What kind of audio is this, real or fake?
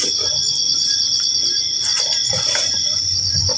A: real